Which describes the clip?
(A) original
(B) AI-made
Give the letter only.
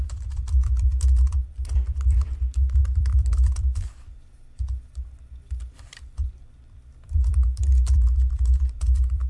B